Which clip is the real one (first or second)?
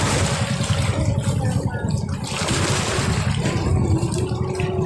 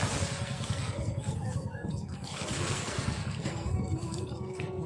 first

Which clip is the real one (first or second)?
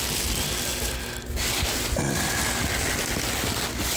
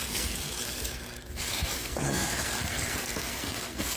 first